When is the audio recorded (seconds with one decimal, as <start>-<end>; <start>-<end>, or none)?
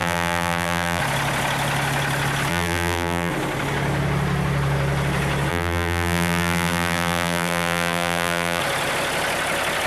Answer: 1.0-2.5; 3.3-5.5; 8.6-9.9